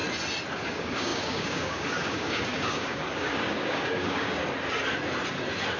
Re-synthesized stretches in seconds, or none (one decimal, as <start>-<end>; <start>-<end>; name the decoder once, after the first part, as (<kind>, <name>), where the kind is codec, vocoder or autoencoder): 0.5-4.4 (codec, DAC)